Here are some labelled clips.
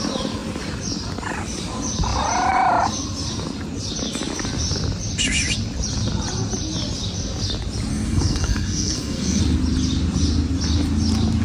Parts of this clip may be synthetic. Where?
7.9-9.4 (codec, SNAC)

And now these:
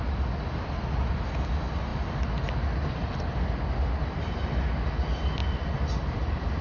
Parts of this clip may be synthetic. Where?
5.4-6.6 (vocoder, BigVGAN v2)

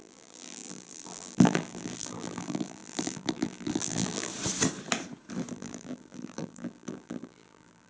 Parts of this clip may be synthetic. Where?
0.0-4.3 (vocoder, BigVGAN v2); 5.5-7.9

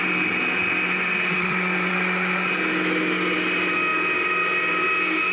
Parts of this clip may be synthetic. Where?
none

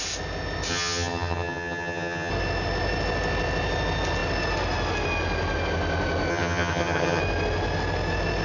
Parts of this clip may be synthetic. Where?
0.7-2.3 (vocoder, HiFi-GAN); 6.3-7.2

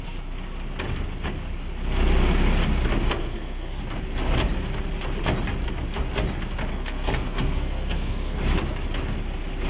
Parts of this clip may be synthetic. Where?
3.2-3.8 (codec, SNAC); 6.7-8.4

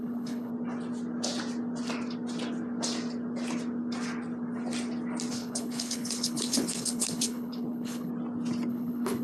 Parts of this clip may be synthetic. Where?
0.0-0.5 (codec, HILCodec); 5.3-8.1; 8.7-9.2

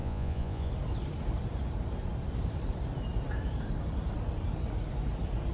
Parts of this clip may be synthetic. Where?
0.0-0.7 (vocoder, Vocos)